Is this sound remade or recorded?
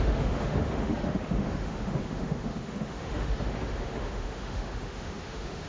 remade